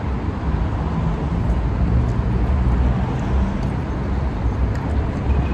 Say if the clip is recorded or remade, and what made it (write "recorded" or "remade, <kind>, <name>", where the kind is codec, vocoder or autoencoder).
recorded